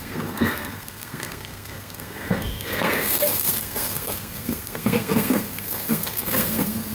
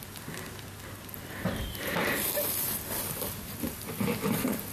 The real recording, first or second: second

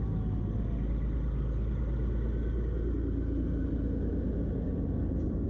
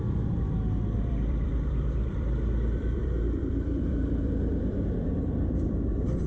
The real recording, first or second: first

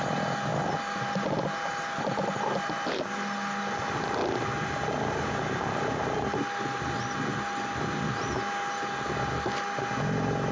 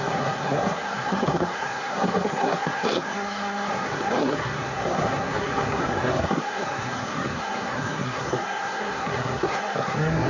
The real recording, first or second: first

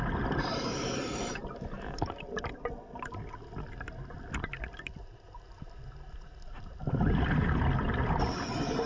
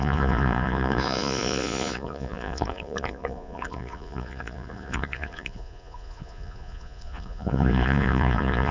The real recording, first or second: first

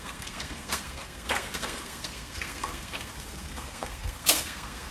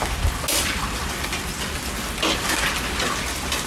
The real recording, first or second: second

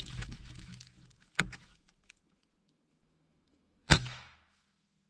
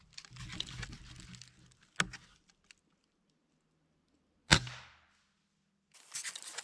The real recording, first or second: second